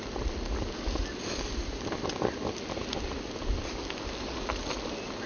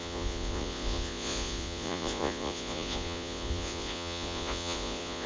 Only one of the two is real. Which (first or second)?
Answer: first